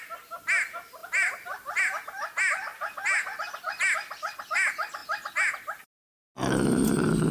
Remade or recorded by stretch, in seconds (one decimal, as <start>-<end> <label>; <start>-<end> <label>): 0.0-1.0 recorded; 1.0-1.8 remade; 1.8-7.3 recorded